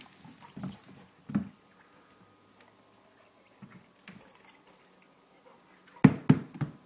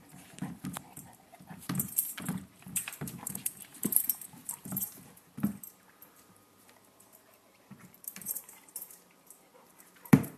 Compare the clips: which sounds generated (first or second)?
second